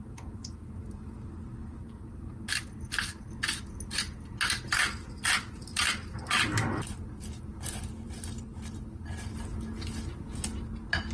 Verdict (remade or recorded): recorded